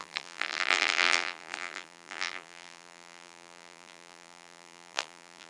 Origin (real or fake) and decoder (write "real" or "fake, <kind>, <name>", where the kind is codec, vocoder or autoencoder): fake, vocoder, BigVGAN v2